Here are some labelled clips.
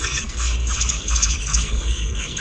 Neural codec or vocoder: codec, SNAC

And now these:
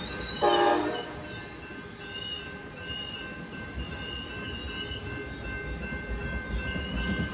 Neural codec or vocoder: none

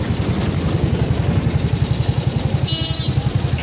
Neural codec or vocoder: none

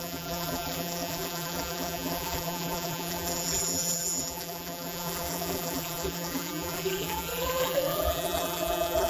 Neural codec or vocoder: vocoder, BigVGAN v2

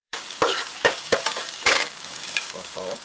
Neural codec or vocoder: codec, DAC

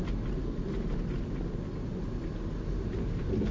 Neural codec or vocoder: none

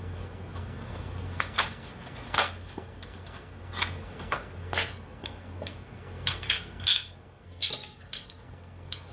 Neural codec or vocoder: codec, SNAC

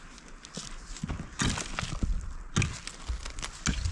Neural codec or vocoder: none